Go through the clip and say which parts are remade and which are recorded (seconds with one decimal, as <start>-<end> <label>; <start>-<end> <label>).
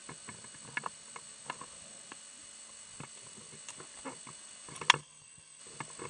0.0-5.0 recorded; 5.0-5.6 remade; 5.6-6.1 recorded